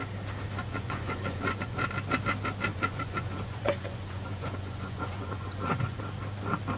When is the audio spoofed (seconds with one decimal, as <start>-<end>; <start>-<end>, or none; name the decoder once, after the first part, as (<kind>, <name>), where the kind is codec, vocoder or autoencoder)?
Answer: 0.6-1.9 (vocoder, Vocos); 2.7-6.0